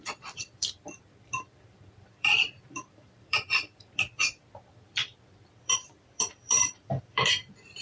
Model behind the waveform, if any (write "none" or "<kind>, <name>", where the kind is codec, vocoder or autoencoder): vocoder, BigVGAN v2